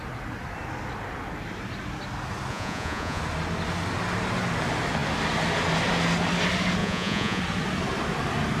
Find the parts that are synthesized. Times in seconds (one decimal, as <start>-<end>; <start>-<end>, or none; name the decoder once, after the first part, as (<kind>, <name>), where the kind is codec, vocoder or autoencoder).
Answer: 2.5-3.2 (vocoder, Vocos); 6.8-7.4